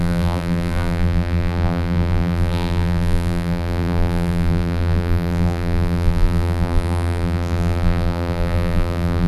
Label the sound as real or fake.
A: fake